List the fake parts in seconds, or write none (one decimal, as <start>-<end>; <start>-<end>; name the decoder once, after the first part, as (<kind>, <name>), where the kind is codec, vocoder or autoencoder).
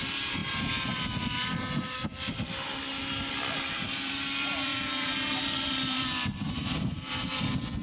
0.0-0.4 (vocoder, BigVGAN v2); 3.3-4.7; 5.4-7.8